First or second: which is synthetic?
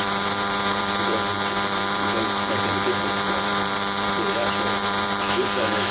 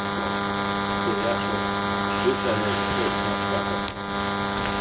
first